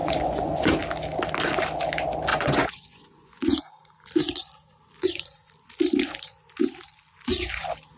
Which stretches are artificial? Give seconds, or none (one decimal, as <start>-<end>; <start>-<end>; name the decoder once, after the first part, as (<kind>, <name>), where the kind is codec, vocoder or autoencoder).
0.0-0.7 (vocoder, Vocos); 2.3-3.6